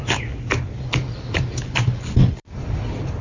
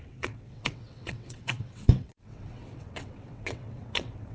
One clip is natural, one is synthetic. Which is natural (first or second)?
first